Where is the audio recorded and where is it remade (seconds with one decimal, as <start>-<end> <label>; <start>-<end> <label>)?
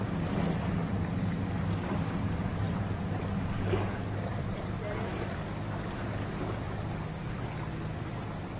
0.0-0.8 recorded; 0.8-1.4 remade; 1.4-4.3 recorded; 4.3-5.1 remade; 5.1-8.6 recorded